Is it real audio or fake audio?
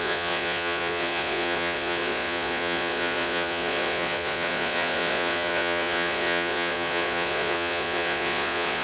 fake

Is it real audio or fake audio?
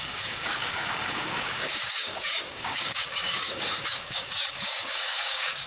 fake